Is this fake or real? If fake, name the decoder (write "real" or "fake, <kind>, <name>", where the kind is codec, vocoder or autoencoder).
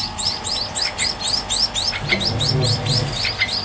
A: real